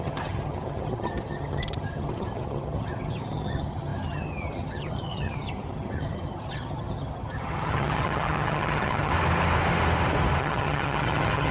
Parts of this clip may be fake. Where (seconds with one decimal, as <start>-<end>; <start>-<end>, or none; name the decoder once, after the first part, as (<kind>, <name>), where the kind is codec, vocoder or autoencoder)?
0.0-9.1 (vocoder, HiFi-GAN); 10.4-11.5